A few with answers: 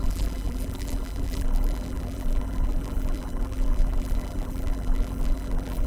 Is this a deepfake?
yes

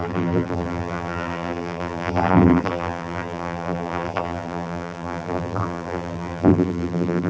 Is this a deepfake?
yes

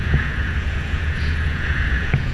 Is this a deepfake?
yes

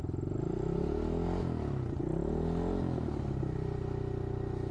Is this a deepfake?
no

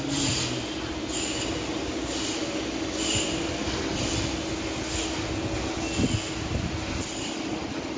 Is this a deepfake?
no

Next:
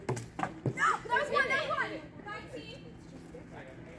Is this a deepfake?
no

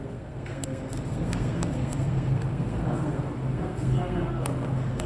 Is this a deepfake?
yes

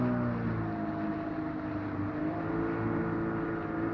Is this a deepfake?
no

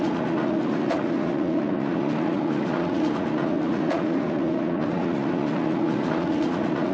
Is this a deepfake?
yes